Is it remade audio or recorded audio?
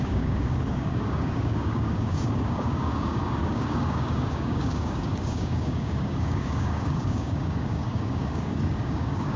remade